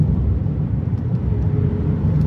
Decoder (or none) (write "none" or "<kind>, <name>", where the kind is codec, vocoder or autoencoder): none